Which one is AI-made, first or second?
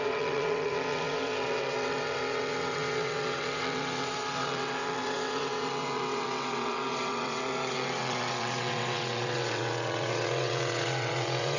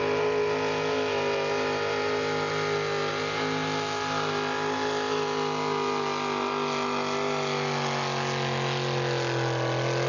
first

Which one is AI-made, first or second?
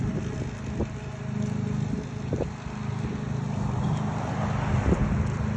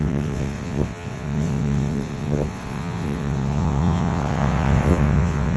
second